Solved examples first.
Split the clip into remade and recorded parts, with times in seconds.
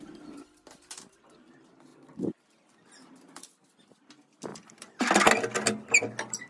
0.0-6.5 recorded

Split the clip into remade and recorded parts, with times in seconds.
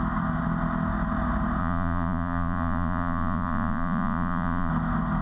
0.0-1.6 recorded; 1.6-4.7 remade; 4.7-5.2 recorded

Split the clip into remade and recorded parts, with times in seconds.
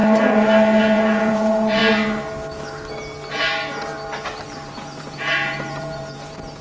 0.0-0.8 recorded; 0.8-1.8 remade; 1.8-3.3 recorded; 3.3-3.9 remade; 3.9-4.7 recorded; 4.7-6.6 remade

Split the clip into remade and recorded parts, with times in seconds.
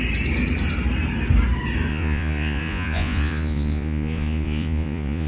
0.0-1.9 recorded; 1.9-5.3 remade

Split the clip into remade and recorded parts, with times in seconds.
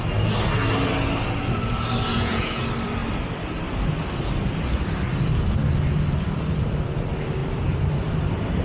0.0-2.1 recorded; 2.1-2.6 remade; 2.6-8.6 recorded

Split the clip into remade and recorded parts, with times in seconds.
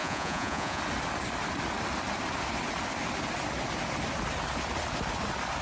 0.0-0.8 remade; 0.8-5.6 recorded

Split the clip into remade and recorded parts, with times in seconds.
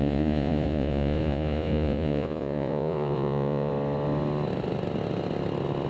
0.0-3.7 remade; 3.7-5.9 recorded